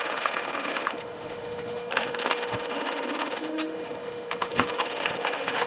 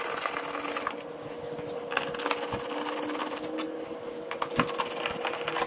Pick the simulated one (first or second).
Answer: first